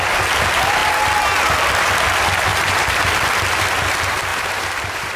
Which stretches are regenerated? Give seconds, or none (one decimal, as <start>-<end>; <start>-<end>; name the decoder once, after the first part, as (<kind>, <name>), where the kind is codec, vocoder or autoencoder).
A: 2.5-3.0 (vocoder, BigVGAN v2); 4.3-5.2